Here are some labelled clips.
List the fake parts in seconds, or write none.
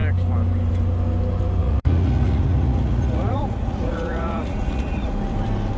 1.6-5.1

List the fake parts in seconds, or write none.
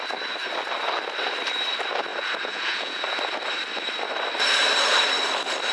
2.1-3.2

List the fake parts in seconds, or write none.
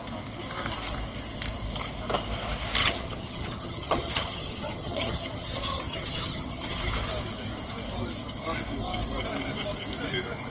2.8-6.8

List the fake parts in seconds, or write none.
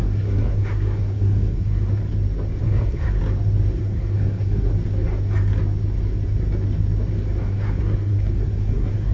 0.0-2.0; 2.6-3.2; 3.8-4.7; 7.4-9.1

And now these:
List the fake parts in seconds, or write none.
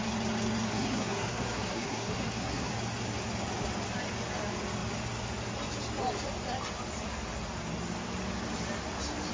0.7-2.7